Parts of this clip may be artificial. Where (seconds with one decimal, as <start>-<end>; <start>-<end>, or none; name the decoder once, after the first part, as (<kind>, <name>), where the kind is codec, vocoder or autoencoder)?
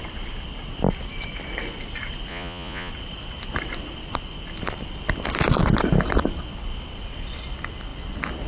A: 2.3-2.9 (vocoder, Vocos)